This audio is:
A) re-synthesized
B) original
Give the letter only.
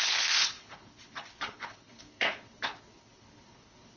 A